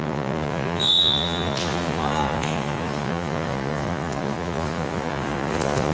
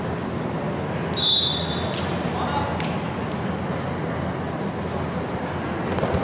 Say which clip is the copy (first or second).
first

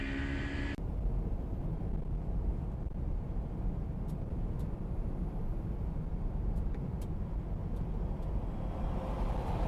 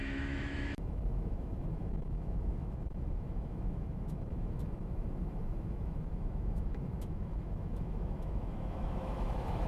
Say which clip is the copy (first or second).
second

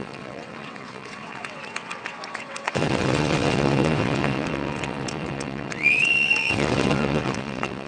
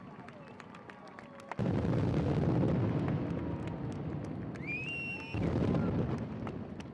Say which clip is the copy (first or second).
first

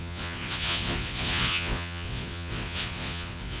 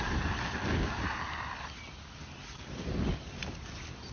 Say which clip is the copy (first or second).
first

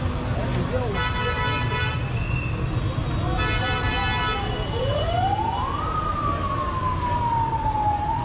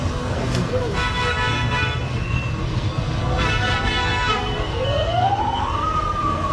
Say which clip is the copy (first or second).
second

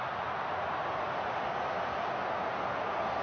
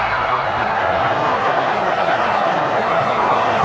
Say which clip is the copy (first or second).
second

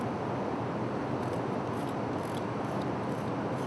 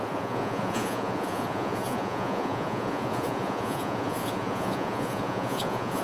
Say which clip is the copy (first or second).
second